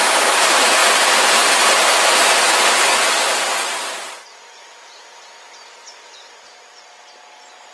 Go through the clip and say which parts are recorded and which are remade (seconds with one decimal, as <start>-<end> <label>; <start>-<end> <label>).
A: 0.0-0.8 remade; 0.8-4.4 recorded; 4.4-7.7 remade